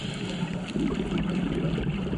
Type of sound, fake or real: real